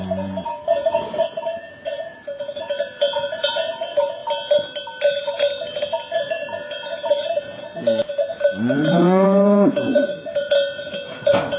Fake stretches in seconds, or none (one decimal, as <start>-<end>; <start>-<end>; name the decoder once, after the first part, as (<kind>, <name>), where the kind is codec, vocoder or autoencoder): 0.0-4.2 (vocoder, Vocos); 5.1-11.6